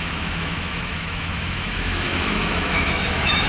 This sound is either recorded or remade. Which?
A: remade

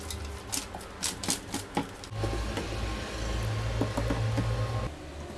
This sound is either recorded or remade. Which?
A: recorded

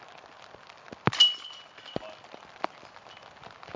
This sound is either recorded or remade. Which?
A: recorded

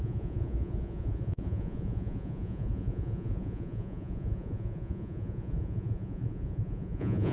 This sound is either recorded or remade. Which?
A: remade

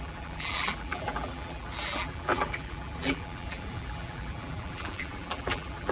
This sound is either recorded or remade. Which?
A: remade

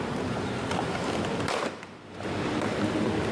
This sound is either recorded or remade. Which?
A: remade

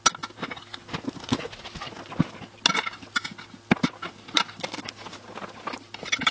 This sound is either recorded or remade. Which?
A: recorded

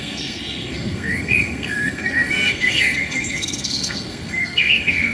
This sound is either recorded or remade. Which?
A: remade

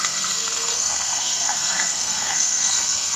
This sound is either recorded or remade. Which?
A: remade